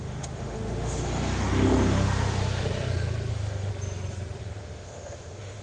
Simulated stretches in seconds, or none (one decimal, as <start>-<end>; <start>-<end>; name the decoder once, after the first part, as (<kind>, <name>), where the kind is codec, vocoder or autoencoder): 0.0-2.7 (autoencoder, DAC-VAE); 3.3-3.7; 4.4-5.6